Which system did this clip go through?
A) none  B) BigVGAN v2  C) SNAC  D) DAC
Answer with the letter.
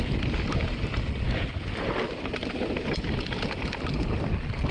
B